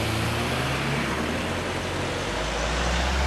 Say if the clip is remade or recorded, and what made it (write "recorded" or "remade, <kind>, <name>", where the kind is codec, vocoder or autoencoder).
recorded